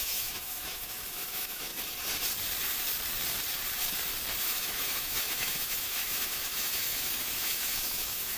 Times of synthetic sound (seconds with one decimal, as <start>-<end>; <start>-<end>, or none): 0.0-1.7; 4.4-8.4